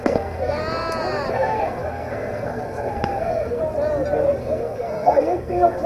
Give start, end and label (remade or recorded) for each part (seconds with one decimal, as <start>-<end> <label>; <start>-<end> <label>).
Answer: 0.0-0.6 remade; 0.6-1.3 recorded; 1.3-3.6 remade; 3.6-4.4 recorded; 4.4-5.9 remade